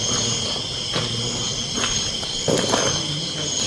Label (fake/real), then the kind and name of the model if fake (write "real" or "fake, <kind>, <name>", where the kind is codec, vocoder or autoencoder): real